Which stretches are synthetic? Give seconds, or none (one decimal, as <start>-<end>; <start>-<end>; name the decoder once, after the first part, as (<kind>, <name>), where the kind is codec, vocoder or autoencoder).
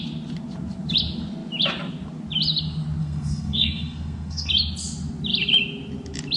3.0-4.5 (codec, SNAC)